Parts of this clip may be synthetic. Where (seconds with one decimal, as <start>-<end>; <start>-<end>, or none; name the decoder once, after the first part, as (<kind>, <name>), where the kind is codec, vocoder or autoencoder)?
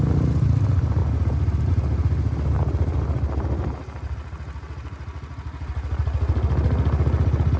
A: none